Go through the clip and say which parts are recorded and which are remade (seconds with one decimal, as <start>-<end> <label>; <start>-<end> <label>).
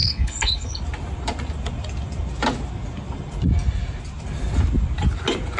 0.0-0.8 remade; 0.8-5.6 recorded